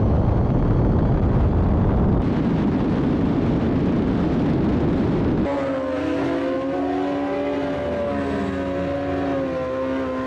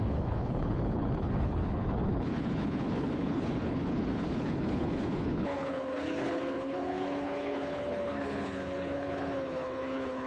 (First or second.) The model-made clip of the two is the second